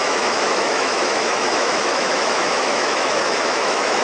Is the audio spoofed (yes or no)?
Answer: yes